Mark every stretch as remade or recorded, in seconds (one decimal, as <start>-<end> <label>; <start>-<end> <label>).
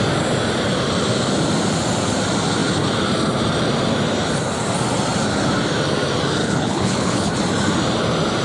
0.0-6.4 recorded; 6.4-7.3 remade; 7.3-8.4 recorded